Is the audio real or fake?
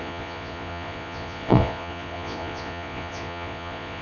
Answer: fake